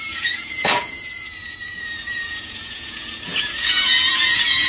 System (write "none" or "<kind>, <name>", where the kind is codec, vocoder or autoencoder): vocoder, Vocos